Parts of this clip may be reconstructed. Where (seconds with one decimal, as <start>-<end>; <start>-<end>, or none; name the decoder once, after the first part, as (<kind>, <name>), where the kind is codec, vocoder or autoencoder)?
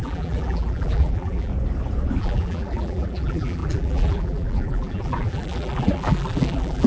0.0-1.5 (vocoder, BigVGAN v2); 2.2-6.9